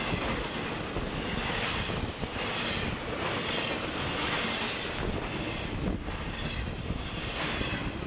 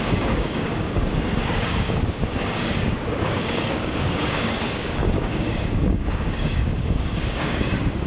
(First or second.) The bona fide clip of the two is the first